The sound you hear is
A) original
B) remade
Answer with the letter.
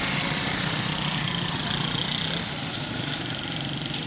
A